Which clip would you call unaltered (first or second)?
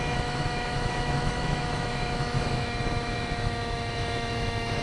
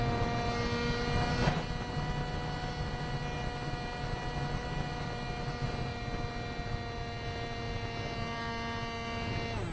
second